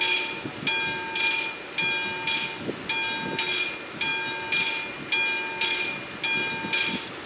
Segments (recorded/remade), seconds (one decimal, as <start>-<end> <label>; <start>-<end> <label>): 0.0-7.2 recorded